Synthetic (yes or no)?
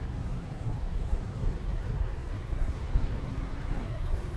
yes